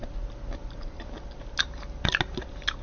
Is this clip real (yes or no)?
yes